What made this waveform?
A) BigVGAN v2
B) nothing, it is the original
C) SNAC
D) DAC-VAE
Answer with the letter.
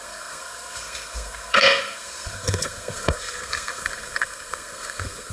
C